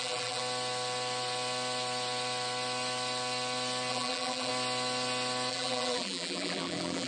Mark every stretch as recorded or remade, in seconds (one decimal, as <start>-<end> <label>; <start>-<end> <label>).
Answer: 0.0-0.4 remade; 0.4-3.9 recorded; 3.9-4.5 remade; 4.5-5.5 recorded; 5.5-7.1 remade